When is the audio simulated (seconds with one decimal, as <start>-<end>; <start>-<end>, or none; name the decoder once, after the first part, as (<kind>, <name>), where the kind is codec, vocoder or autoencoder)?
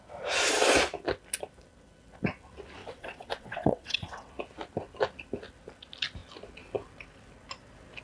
2.8-4.3 (vocoder, WaveNeXt)